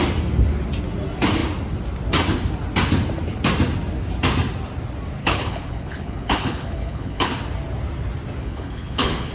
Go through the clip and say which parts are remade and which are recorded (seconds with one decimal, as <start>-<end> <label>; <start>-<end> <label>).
0.0-5.2 recorded; 5.2-7.3 remade; 7.3-8.4 recorded; 8.4-9.3 remade